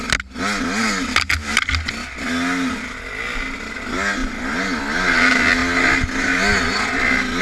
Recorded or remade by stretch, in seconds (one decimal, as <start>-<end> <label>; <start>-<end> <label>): 0.0-7.4 recorded

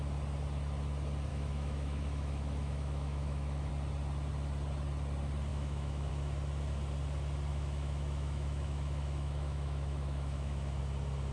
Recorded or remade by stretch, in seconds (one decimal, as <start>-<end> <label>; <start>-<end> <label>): 0.0-1.3 recorded; 1.3-3.7 remade; 3.7-5.5 recorded; 5.5-6.1 remade; 6.1-7.5 recorded; 7.5-10.8 remade; 10.8-11.3 recorded

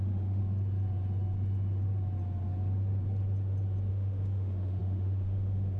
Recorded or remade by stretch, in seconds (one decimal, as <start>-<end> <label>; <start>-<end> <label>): 0.0-0.4 remade; 0.4-3.9 recorded; 3.9-5.8 remade